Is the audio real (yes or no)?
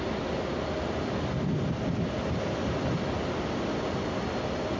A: yes